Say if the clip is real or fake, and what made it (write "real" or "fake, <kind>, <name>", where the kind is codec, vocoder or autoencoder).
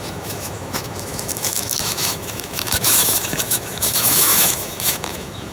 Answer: fake, autoencoder, DAC-VAE